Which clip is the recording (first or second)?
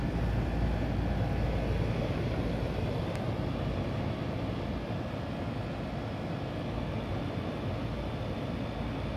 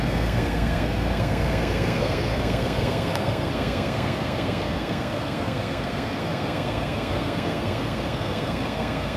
first